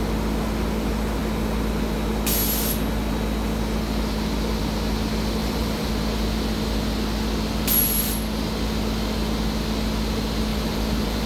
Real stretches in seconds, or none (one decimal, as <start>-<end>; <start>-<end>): 0.0-5.4; 5.9-10.5